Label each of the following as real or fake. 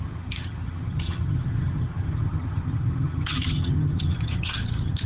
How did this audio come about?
fake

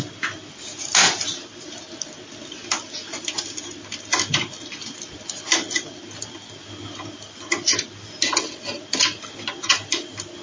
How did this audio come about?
real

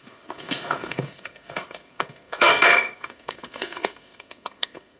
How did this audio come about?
fake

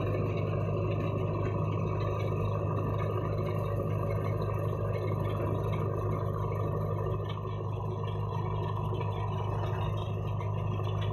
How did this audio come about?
real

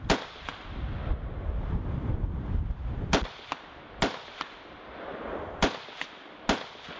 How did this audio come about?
real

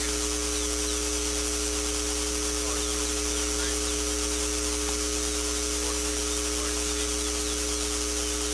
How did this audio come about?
real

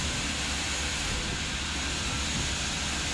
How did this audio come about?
real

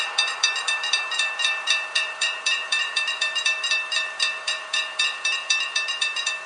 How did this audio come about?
fake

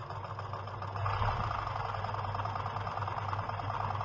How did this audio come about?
real